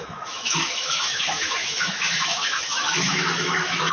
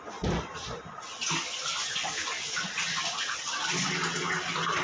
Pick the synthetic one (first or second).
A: first